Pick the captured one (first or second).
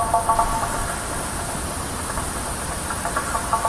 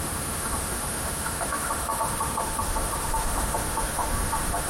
first